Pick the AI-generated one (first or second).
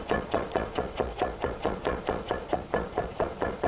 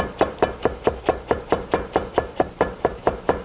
first